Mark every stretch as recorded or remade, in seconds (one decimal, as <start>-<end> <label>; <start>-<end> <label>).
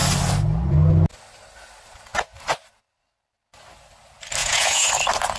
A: 0.0-4.4 recorded; 4.4-4.9 remade; 4.9-5.4 recorded